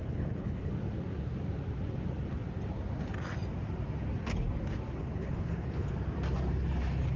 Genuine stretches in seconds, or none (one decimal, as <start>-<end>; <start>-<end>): 0.7-5.0; 5.9-7.2